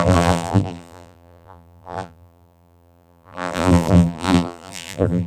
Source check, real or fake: fake